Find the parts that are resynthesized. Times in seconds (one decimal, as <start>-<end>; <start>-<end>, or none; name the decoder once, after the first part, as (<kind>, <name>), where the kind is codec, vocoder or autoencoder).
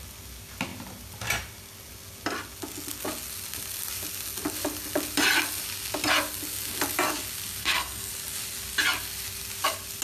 7.6-8.1 (codec, SNAC)